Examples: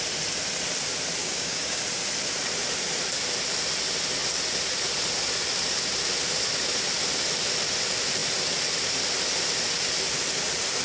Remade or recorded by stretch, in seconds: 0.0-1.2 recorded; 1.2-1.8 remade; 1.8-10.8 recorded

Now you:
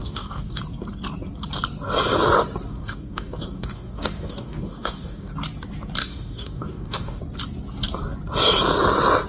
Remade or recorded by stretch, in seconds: 0.0-0.6 remade; 0.6-2.7 recorded; 2.7-5.3 remade; 5.3-6.0 recorded; 6.0-7.2 remade; 7.2-9.3 recorded

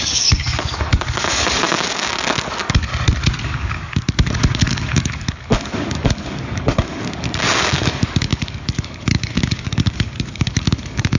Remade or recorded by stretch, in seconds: 0.0-2.9 remade; 2.9-3.4 recorded; 3.4-11.2 remade

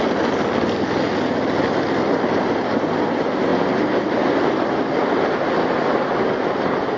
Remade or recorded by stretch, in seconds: 0.0-7.0 recorded

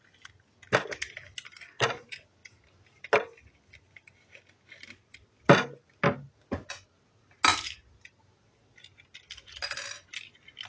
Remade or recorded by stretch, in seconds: 0.0-10.7 recorded

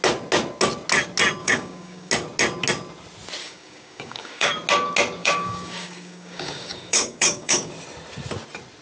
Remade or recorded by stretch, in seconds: 0.0-1.4 recorded; 1.4-2.1 remade; 2.1-3.4 recorded; 3.4-4.5 remade; 4.5-5.2 recorded; 5.2-7.7 remade; 7.7-8.8 recorded

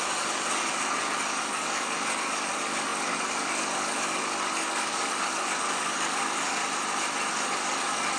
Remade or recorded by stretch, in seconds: 0.0-6.6 remade; 6.6-7.3 recorded; 7.3-8.2 remade

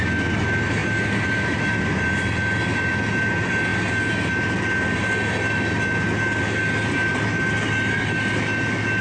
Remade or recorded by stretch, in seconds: 0.0-9.0 recorded